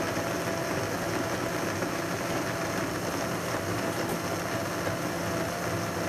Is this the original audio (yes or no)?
yes